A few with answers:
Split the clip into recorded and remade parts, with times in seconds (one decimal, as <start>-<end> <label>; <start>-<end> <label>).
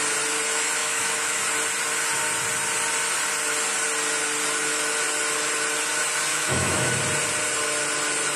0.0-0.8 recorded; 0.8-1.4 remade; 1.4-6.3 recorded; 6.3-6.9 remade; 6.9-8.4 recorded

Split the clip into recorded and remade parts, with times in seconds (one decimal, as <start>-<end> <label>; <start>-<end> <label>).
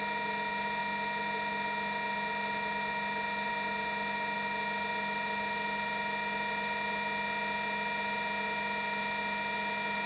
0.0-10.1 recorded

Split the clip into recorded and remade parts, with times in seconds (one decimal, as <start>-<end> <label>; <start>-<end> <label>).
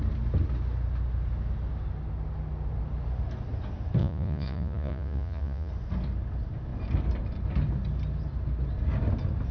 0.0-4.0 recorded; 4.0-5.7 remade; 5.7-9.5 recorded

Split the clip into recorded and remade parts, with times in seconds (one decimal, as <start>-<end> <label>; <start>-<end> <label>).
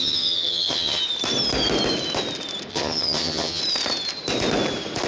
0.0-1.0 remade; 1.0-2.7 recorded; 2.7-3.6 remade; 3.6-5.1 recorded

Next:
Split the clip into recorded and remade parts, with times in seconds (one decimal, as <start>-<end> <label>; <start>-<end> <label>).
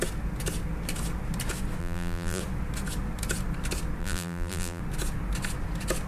0.0-1.8 recorded; 1.8-2.4 remade; 2.4-4.0 recorded; 4.0-4.8 remade; 4.8-6.1 recorded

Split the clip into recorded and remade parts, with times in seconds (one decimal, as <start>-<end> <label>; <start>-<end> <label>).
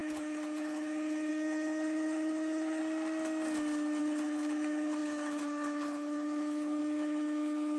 0.0-2.8 remade; 2.8-4.0 recorded; 4.0-7.8 remade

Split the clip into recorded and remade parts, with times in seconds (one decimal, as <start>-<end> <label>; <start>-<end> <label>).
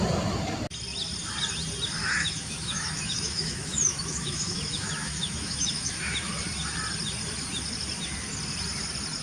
0.0-2.0 recorded; 2.0-6.3 remade; 6.3-9.2 recorded